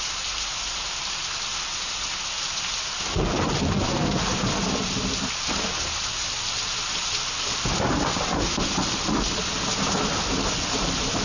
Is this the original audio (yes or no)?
yes